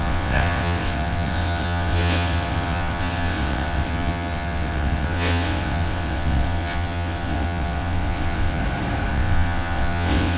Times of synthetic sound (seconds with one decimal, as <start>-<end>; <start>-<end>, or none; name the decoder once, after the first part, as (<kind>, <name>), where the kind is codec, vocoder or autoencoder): 0.0-8.6 (vocoder, WaveNeXt); 9.1-10.4